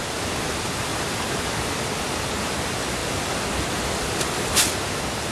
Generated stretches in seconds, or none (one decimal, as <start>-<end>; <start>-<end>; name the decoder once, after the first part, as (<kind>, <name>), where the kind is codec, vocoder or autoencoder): 0.9-2.2 (vocoder, BigVGAN v2)